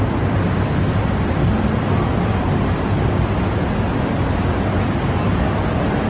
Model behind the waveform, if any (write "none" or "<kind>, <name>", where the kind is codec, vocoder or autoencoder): none